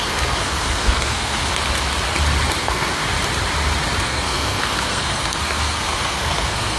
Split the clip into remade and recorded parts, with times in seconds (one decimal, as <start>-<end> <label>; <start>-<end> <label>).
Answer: 0.0-1.5 remade; 1.5-2.6 recorded; 2.6-3.0 remade; 3.0-4.0 recorded; 4.0-6.8 remade